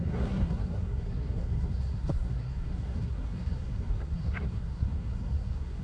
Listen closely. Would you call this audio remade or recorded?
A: remade